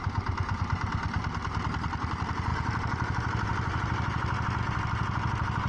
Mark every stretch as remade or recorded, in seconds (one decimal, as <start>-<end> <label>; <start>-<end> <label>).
0.0-2.5 recorded; 2.5-4.6 remade; 4.6-5.7 recorded